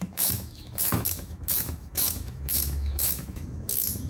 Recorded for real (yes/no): no